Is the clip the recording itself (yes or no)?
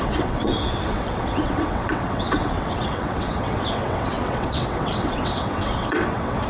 no